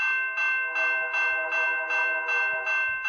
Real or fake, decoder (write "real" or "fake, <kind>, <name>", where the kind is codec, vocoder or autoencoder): real